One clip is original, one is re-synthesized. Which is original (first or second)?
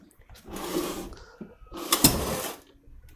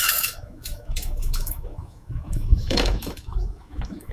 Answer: first